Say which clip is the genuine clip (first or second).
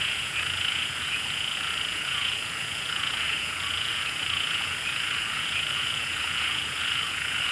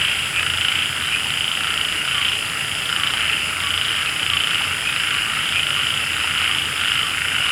second